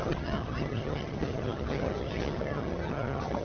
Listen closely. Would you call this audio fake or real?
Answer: fake